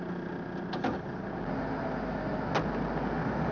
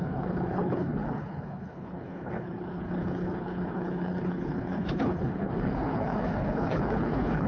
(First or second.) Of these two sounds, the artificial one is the second